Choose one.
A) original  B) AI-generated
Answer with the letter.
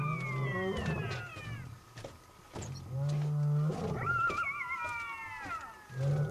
A